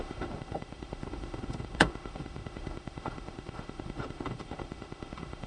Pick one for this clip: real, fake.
fake